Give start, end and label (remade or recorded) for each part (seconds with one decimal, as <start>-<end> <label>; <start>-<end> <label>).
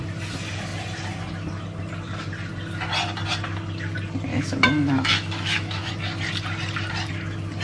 0.0-4.3 recorded; 4.3-5.9 remade; 5.9-7.6 recorded